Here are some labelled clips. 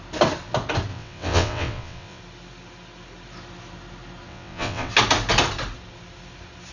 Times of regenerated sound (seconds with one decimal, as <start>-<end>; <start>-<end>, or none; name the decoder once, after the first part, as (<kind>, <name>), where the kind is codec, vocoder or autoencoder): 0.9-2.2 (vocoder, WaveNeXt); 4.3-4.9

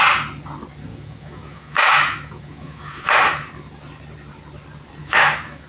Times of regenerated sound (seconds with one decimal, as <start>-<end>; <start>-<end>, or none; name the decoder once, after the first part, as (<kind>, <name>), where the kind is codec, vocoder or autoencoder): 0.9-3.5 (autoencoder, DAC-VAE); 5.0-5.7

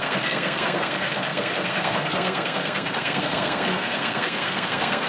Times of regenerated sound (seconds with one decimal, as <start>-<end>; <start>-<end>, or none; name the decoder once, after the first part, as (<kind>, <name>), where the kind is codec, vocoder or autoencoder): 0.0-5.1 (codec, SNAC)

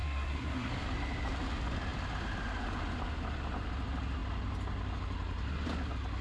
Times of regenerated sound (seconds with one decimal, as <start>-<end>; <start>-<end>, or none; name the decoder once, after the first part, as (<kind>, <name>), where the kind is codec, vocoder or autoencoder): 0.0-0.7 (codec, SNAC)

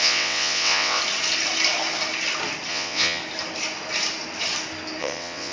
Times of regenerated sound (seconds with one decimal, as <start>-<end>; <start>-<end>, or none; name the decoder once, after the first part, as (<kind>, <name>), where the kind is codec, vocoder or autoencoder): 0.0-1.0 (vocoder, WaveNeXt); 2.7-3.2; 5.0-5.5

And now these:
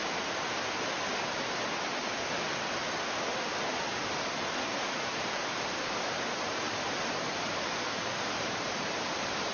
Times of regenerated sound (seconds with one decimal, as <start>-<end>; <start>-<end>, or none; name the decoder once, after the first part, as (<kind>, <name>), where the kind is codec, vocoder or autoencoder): 4.9-9.5 (vocoder, BigVGAN v2)

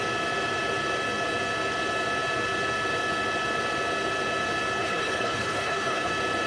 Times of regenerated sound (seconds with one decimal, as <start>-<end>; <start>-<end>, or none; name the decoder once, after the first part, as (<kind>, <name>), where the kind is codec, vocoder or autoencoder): 4.8-6.1 (codec, HILCodec)

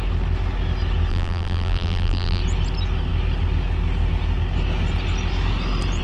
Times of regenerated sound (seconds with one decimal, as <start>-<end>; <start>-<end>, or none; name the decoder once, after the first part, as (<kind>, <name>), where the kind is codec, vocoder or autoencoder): 1.1-2.4 (vocoder, BigVGAN v2)